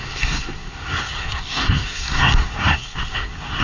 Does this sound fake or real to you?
fake